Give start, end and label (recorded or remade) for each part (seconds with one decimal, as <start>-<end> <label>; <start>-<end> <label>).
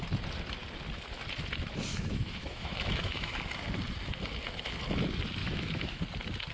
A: 0.0-1.9 recorded; 1.9-3.4 remade; 3.4-5.4 recorded; 5.4-6.0 remade; 6.0-6.5 recorded